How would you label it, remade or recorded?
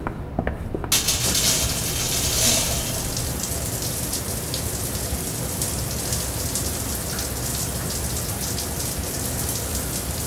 recorded